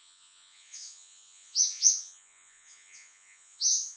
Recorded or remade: remade